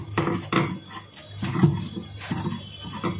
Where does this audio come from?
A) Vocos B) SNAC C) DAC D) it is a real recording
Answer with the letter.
D